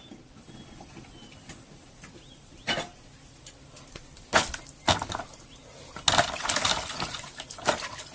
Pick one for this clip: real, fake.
real